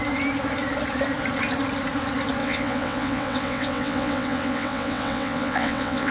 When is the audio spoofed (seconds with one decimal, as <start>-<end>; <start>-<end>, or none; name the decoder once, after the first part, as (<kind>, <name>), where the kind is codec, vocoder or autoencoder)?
2.4-6.1 (vocoder, WaveNeXt)